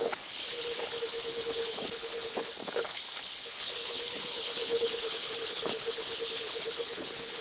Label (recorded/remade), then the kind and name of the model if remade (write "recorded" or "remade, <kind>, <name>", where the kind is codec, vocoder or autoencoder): remade, codec, HILCodec